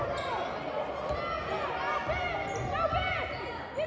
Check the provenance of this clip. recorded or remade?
recorded